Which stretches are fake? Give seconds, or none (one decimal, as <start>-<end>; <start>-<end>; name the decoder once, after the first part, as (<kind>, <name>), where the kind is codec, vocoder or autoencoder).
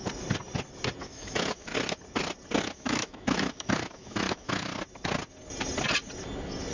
1.0-1.7 (autoencoder, DAC-VAE); 2.6-4.7